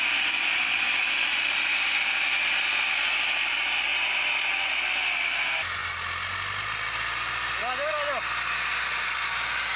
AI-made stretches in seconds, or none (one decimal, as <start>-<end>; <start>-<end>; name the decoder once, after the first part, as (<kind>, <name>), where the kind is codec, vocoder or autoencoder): none